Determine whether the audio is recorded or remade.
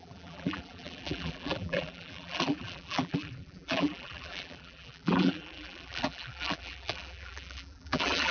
remade